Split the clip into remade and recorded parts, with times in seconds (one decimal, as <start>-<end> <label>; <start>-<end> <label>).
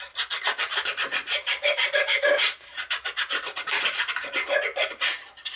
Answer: 0.0-0.7 recorded; 0.7-4.1 remade; 4.1-5.6 recorded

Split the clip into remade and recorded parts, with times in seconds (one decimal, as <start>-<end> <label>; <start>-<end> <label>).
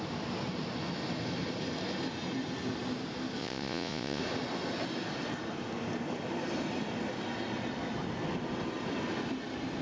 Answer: 0.0-3.4 recorded; 3.4-4.2 remade; 4.2-9.8 recorded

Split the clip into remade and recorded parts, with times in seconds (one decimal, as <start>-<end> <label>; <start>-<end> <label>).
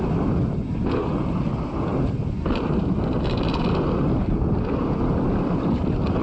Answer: 0.0-6.2 recorded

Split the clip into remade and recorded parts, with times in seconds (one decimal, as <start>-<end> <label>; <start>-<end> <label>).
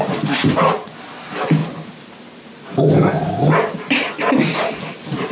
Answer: 0.0-5.3 recorded